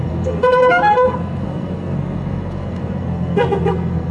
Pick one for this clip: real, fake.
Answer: fake